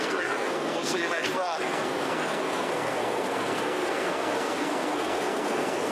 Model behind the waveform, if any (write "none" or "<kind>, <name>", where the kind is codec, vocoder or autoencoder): codec, SNAC